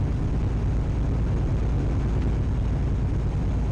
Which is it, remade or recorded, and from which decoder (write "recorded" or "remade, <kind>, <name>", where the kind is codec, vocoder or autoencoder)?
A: recorded